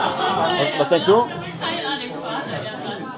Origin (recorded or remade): recorded